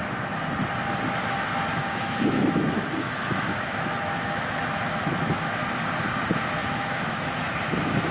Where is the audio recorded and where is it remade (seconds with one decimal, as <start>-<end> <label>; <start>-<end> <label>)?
0.0-1.7 recorded; 1.7-5.5 remade; 5.5-6.6 recorded; 6.6-7.5 remade; 7.5-8.1 recorded